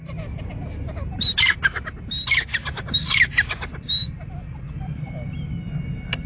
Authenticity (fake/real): real